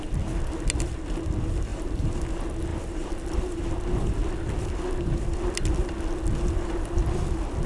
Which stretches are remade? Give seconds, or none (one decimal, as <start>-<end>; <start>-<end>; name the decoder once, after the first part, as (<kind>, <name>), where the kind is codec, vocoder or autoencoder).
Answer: 1.7-2.2 (vocoder, BigVGAN v2); 2.7-3.9